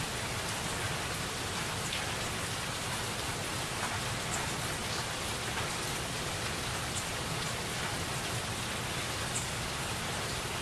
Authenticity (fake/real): real